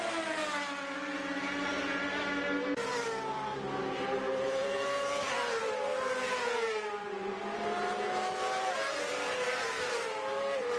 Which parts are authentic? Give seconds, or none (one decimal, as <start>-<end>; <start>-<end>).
1.7-3.8